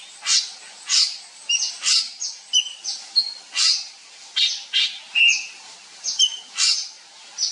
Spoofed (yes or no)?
no